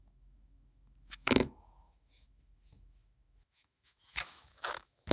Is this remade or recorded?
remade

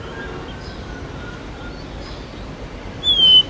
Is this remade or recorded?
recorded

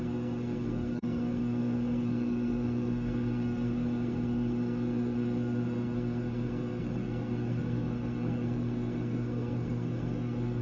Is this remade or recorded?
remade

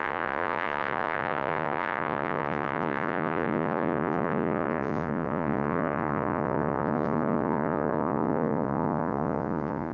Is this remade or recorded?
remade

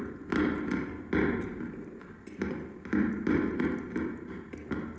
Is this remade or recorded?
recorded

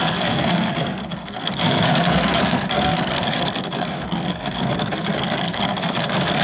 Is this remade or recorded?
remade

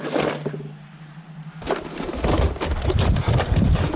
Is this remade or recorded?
recorded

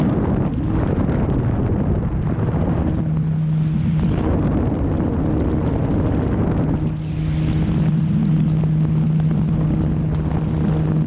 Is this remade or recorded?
recorded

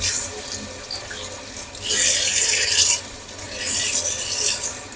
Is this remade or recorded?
recorded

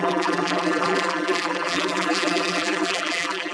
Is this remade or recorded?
remade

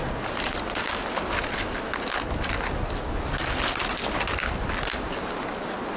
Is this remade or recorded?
recorded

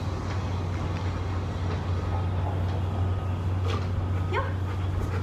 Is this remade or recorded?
recorded